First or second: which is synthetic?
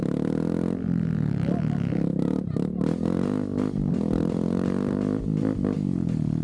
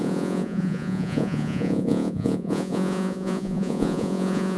second